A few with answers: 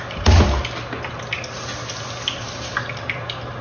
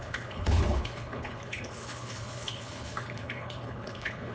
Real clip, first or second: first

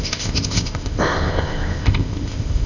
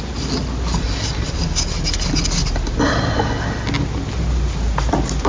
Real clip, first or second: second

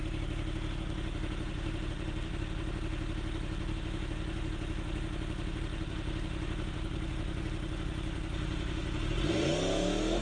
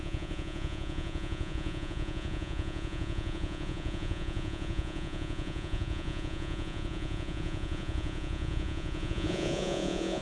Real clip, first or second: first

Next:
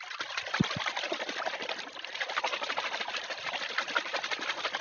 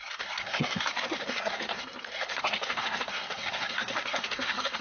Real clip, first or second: first